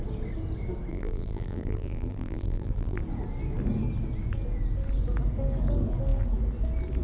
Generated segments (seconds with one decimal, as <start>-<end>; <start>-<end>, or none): 0.9-3.0